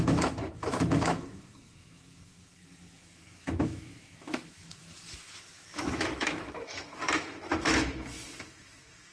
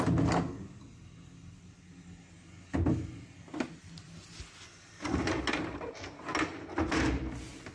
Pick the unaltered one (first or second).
second